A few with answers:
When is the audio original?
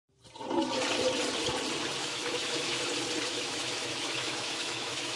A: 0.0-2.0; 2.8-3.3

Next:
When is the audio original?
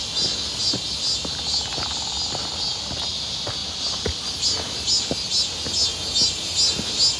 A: 0.0-7.2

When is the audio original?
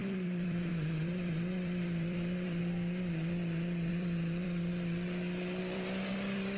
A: 2.6-3.9; 4.7-5.6